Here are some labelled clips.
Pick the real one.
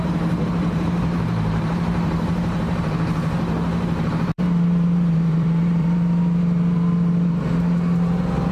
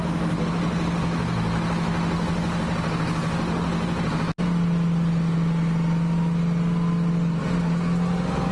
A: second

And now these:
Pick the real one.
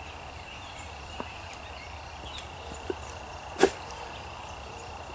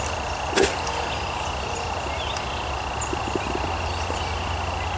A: second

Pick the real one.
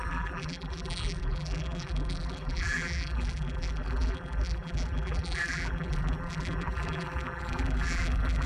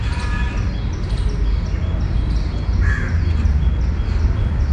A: second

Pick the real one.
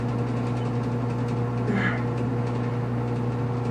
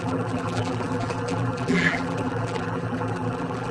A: first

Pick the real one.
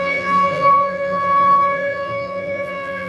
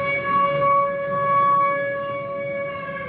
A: second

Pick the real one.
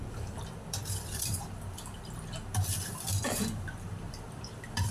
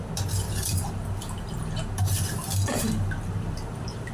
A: second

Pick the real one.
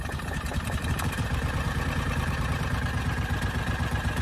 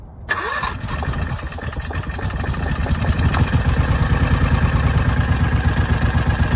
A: second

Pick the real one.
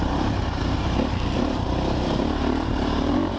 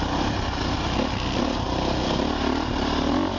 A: second